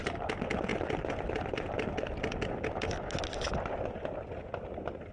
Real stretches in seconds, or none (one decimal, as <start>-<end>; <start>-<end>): 0.0-5.1